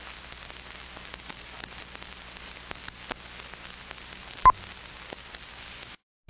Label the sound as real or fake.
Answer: real